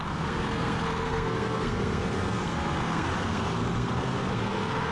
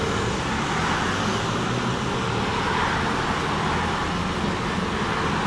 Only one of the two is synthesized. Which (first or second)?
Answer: first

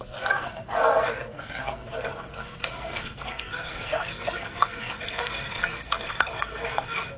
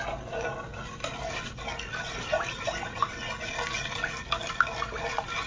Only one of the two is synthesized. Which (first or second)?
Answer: first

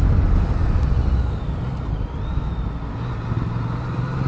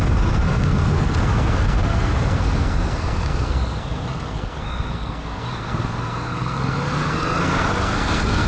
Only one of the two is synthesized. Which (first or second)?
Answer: second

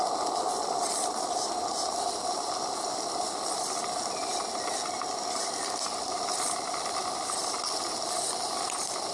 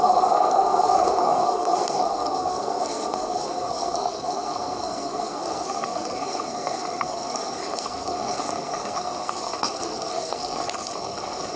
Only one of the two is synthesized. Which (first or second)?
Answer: second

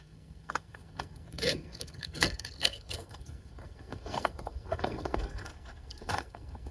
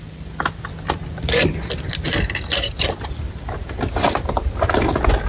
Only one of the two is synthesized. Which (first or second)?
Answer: first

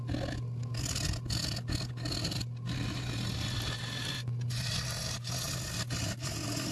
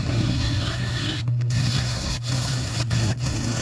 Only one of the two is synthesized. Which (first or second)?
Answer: second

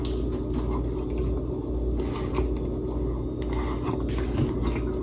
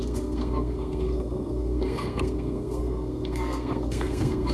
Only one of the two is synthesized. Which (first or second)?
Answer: second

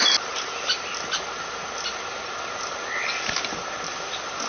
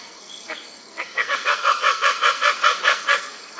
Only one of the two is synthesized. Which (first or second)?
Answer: second